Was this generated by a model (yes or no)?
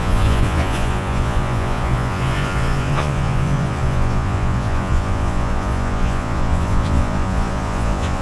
yes